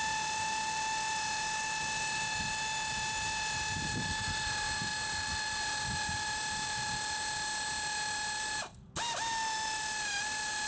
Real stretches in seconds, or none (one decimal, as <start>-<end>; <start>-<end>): 0.0-4.9; 5.6-10.7